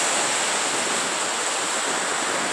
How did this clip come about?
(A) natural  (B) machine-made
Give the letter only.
A